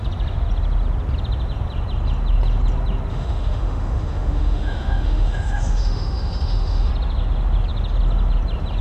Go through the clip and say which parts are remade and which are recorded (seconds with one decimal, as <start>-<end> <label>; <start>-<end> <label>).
0.0-3.1 recorded; 3.1-6.9 remade; 6.9-8.8 recorded